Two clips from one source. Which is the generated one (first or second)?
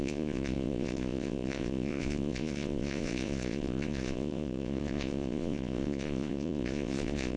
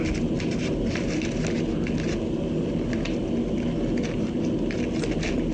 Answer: first